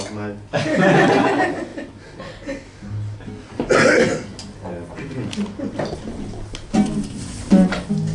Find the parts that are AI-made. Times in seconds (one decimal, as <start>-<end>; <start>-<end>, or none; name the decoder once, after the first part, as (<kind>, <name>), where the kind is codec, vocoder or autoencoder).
none